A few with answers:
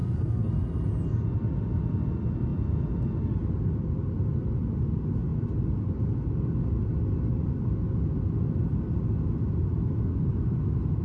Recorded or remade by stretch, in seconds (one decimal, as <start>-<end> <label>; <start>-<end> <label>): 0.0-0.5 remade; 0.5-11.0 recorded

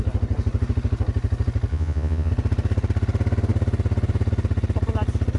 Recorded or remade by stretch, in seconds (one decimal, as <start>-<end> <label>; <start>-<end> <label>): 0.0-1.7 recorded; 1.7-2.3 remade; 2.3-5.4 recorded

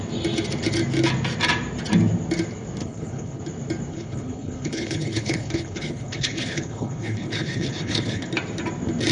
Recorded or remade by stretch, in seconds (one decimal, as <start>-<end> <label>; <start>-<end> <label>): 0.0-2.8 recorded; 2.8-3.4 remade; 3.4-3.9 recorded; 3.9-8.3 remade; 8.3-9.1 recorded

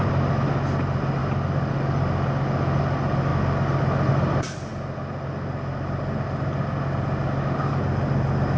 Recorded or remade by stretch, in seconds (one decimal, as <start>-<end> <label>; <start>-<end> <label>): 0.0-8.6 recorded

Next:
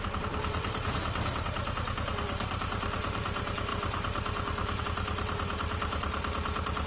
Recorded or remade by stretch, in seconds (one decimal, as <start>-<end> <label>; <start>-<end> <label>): 0.0-1.6 remade; 1.6-2.6 recorded; 2.6-6.9 remade

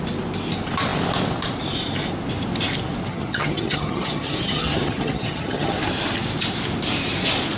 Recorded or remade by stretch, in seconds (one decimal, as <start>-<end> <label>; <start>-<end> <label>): 0.0-3.1 recorded; 3.1-5.8 remade; 5.8-7.6 recorded